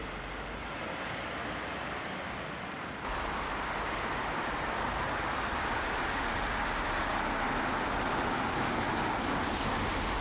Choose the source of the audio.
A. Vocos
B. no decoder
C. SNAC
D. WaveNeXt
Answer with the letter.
B